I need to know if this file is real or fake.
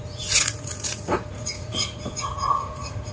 fake